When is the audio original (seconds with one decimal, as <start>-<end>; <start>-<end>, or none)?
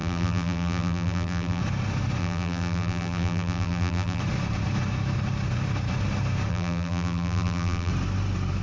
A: 1.6-2.2; 4.2-6.5; 7.9-8.6